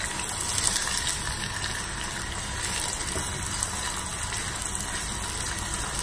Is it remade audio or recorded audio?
recorded